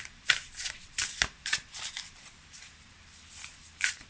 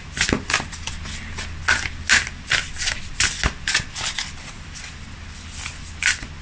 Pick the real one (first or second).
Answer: second